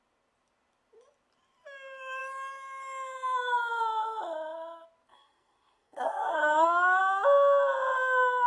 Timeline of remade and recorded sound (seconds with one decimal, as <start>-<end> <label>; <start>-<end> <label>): 0.0-5.1 recorded; 5.1-7.0 remade; 7.0-8.5 recorded